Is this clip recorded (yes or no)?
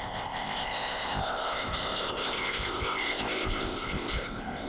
no